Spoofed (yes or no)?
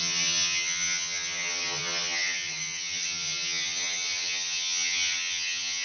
yes